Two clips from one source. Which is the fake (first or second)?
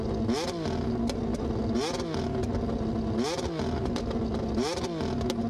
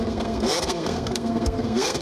second